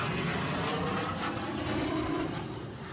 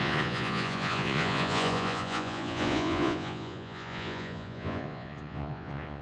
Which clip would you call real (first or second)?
first